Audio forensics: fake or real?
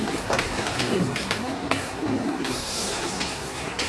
fake